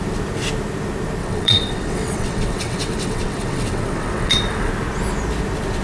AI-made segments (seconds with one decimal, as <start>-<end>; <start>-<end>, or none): 1.2-4.7